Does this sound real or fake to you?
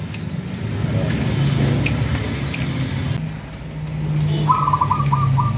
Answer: real